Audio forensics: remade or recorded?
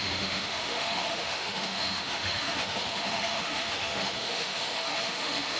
remade